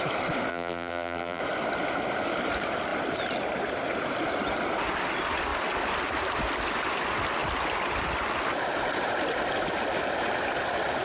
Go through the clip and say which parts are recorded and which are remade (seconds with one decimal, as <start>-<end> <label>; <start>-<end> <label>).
0.0-0.5 recorded; 0.5-1.4 remade; 1.4-11.0 recorded